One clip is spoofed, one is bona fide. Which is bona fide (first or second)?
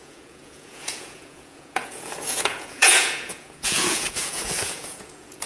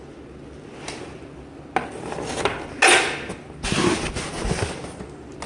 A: second